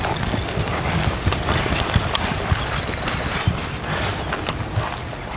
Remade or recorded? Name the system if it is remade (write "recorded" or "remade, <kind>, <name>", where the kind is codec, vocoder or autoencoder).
recorded